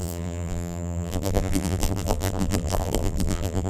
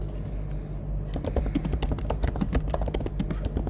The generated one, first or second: first